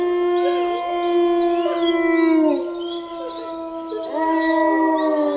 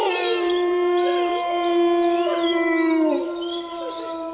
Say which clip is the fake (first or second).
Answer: second